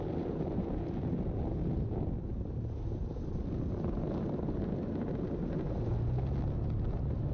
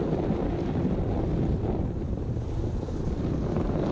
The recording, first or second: first